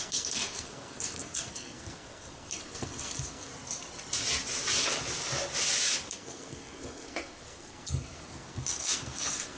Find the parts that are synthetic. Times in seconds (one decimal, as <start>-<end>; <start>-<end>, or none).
0.0-3.5; 6.1-9.6